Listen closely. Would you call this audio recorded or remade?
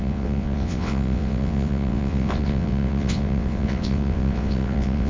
remade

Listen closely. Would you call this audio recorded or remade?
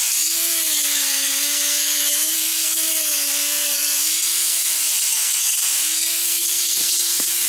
remade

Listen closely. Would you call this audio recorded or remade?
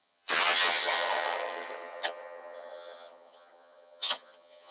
remade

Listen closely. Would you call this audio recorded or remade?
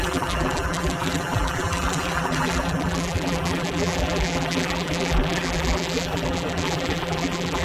remade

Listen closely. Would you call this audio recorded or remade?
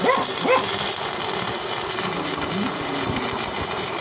recorded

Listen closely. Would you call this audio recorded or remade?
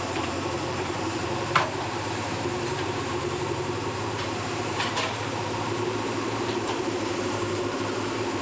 remade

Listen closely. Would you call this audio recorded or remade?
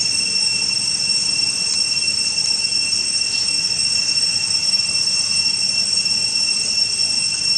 recorded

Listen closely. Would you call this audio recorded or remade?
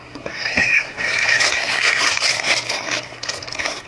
remade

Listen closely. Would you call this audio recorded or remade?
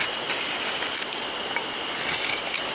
recorded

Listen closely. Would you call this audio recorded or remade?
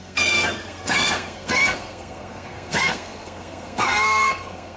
remade